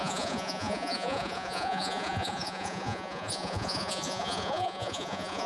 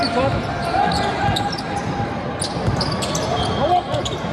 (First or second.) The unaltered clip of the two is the second